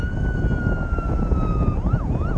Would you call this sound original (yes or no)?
yes